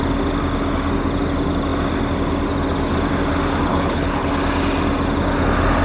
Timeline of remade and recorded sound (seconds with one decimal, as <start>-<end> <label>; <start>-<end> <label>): 0.0-3.7 recorded; 3.7-4.3 remade; 4.3-5.8 recorded